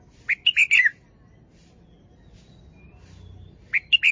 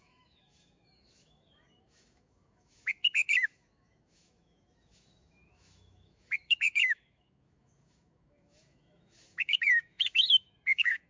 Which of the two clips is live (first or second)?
first